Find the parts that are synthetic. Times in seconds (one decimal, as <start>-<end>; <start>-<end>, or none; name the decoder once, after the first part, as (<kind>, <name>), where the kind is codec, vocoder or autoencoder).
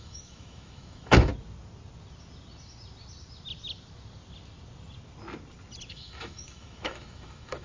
0.0-1.3 (autoencoder, DAC-VAE); 5.9-7.6